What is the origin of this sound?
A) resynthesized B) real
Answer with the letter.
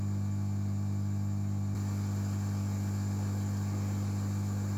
B